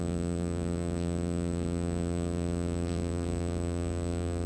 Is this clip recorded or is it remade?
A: remade